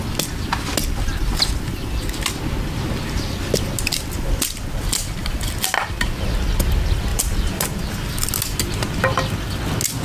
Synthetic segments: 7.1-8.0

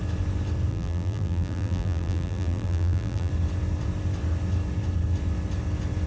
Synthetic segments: 0.7-3.3

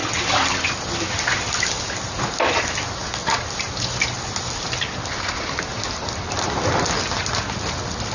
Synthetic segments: 5.7-6.7

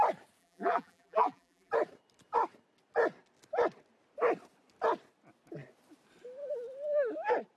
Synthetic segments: 0.4-1.7

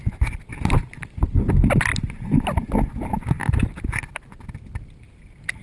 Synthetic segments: none

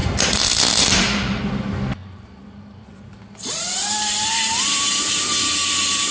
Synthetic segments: 0.0-1.4; 2.0-6.1

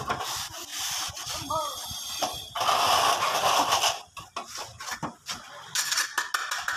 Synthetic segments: 0.7-3.8